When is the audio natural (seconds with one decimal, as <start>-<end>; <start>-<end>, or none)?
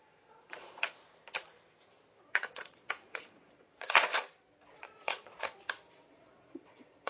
1.0-2.2; 4.2-4.7